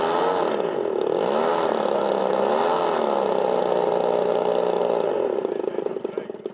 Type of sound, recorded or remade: recorded